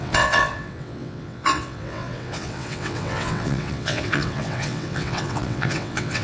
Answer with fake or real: fake